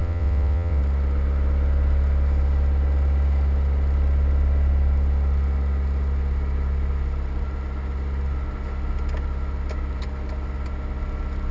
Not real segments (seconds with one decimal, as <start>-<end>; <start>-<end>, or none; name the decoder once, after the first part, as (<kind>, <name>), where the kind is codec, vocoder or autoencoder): 0.0-0.8 (vocoder, WaveNeXt)